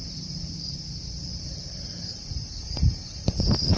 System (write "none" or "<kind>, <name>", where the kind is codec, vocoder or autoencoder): vocoder, BigVGAN v2